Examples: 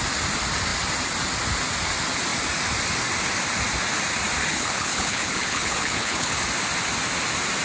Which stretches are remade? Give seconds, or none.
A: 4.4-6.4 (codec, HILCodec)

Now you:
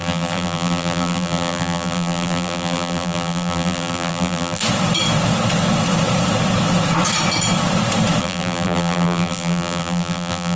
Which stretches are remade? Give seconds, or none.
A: 0.0-4.6 (vocoder, BigVGAN v2); 8.2-10.6